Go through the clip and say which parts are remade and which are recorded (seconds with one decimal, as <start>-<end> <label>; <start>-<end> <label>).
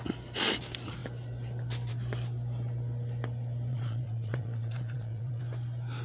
0.0-3.7 recorded; 3.7-5.4 remade; 5.4-6.0 recorded